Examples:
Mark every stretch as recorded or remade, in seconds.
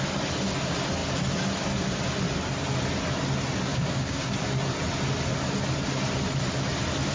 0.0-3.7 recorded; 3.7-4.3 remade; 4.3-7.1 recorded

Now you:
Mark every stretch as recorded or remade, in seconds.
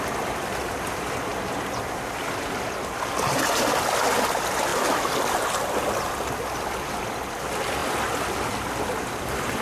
0.0-9.6 recorded